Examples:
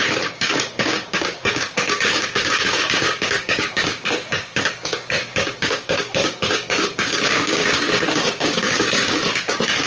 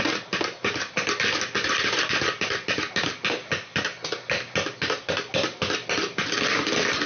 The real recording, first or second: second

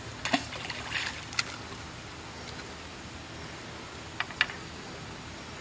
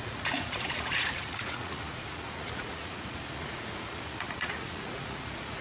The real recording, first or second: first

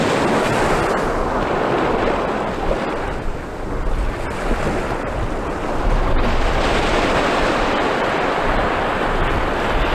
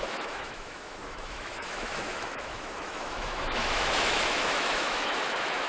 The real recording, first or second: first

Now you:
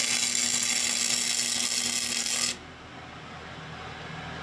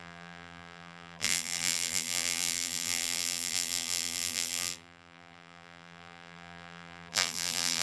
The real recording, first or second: first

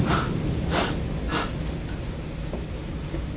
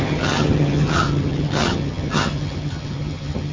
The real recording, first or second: first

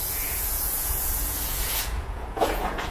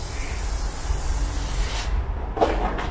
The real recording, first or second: second